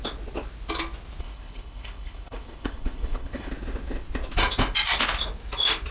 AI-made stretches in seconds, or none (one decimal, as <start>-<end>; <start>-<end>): 1.2-3.5